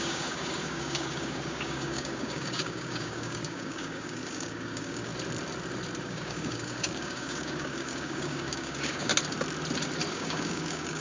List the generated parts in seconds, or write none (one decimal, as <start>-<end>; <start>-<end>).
0.0-5.1; 6.0-9.1; 10.1-11.0